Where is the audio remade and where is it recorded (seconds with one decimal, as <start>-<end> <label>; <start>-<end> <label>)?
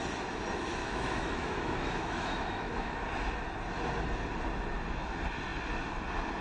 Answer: 0.0-0.8 recorded; 0.8-2.9 remade; 2.9-6.4 recorded